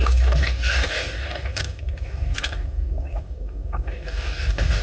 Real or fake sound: fake